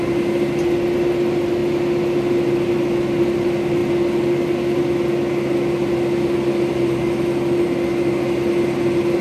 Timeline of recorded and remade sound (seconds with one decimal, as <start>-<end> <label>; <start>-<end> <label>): 0.0-9.2 recorded